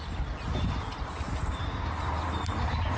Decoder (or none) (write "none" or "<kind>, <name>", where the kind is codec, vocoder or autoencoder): none